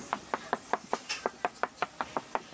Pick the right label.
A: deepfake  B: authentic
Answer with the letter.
B